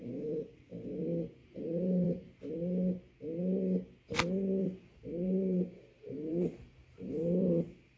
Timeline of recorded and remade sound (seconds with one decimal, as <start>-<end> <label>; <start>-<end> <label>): 0.0-1.4 recorded; 1.4-2.3 remade; 2.3-4.6 recorded; 4.6-8.0 remade